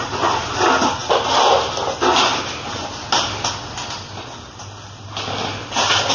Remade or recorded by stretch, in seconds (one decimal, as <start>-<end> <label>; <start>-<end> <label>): 0.0-6.1 recorded